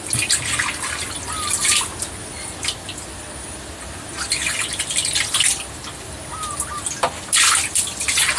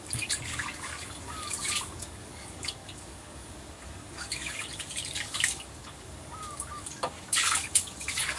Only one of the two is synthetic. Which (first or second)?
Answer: second